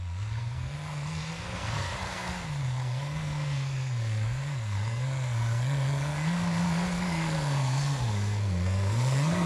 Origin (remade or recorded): remade